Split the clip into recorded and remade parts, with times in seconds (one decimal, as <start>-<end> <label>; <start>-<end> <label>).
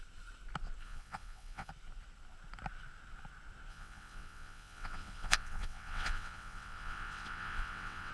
0.0-0.8 recorded; 0.8-1.7 remade; 1.7-3.7 recorded; 3.7-8.1 remade